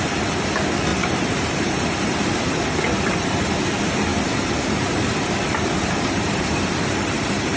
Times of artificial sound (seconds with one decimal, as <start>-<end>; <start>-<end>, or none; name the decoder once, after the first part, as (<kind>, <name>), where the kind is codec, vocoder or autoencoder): 0.9-2.4 (vocoder, BigVGAN v2); 4.1-7.6